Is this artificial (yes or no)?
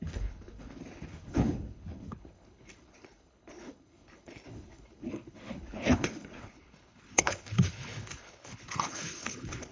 yes